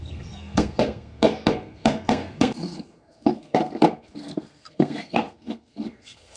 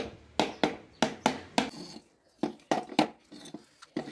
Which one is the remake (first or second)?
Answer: first